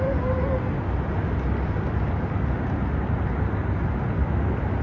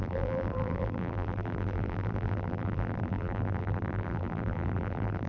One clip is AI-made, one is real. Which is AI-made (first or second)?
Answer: second